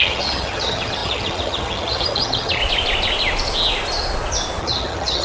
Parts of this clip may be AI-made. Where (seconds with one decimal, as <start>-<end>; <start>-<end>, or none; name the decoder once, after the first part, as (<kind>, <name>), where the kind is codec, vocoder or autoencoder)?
0.0-2.6 (vocoder, HiFi-GAN); 4.6-5.2